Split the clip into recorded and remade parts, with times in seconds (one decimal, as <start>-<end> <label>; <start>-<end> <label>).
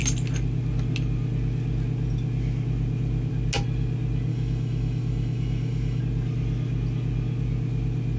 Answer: 0.0-4.3 recorded; 4.3-6.0 remade; 6.0-8.2 recorded